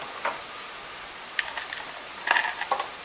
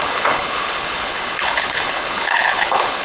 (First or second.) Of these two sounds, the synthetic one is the second